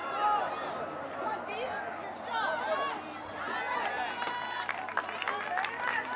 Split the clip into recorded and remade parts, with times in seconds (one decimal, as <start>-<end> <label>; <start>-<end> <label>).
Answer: 0.0-6.2 recorded